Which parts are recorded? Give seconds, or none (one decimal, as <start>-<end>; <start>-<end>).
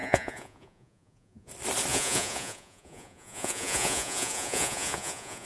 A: 1.5-1.9